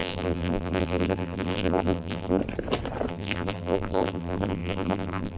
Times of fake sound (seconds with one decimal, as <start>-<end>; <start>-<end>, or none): 0.0-2.4; 3.1-5.4